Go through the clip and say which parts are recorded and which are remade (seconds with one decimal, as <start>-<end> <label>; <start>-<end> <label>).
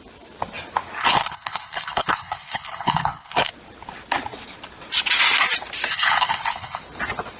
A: 0.0-1.0 recorded; 1.0-3.5 remade; 3.5-5.9 recorded; 5.9-6.8 remade; 6.8-7.4 recorded